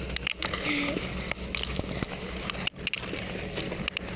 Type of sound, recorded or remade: recorded